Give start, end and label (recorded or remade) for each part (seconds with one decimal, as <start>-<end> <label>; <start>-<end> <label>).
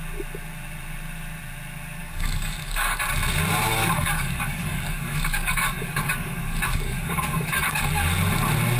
0.0-2.0 recorded; 2.0-3.0 remade; 3.0-3.7 recorded; 3.7-7.9 remade; 7.9-8.8 recorded